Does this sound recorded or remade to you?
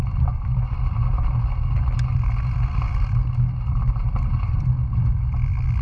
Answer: recorded